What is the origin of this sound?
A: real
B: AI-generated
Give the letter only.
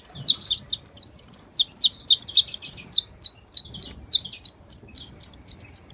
A